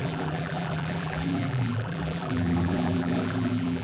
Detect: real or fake fake